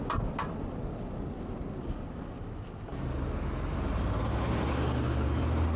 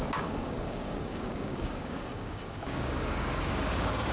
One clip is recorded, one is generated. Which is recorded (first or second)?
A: first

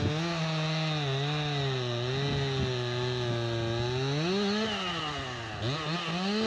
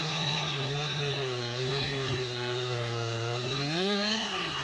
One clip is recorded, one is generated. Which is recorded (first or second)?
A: first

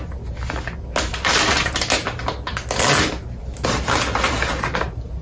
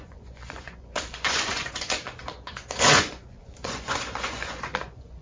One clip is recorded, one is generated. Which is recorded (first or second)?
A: first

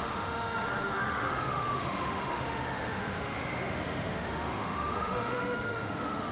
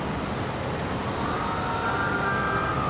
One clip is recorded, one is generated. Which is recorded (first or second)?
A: second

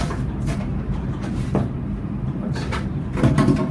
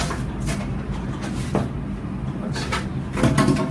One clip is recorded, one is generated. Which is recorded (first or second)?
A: second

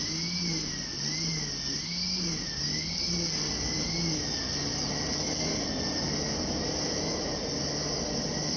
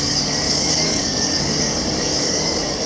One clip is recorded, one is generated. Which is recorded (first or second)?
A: first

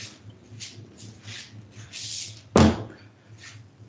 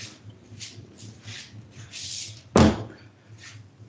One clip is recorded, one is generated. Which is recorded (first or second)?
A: first